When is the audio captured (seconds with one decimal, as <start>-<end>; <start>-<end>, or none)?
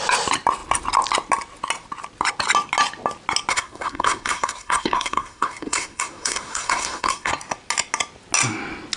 0.0-3.5; 7.3-9.0